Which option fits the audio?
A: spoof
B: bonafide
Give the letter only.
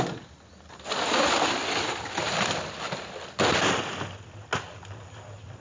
B